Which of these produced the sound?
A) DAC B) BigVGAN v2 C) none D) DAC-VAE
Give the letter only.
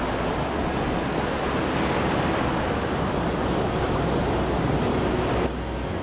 C